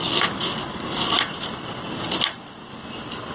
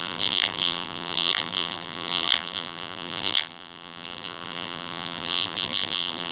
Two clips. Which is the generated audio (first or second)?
second